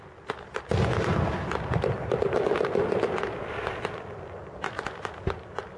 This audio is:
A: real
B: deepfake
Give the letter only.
A